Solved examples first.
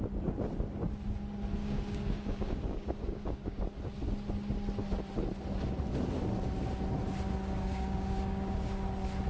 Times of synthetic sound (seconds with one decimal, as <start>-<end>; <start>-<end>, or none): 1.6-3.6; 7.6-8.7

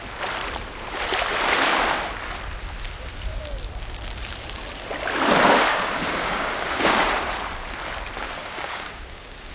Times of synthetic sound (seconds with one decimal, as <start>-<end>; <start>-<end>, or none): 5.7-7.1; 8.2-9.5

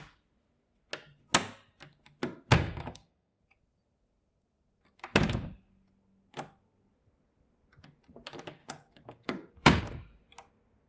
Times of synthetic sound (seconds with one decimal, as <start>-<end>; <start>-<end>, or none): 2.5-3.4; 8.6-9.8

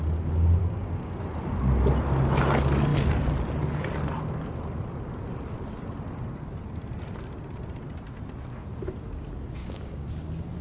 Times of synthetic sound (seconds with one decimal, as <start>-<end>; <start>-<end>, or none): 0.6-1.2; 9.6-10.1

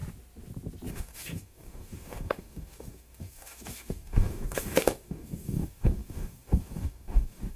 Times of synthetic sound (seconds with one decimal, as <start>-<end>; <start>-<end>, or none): 0.9-7.6